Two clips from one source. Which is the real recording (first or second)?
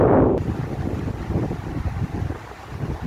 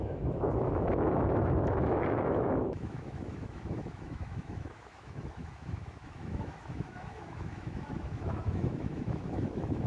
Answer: first